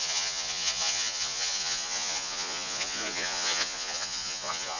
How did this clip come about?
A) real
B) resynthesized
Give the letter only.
B